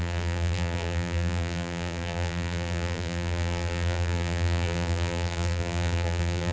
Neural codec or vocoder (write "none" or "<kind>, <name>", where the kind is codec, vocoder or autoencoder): vocoder, BigVGAN v2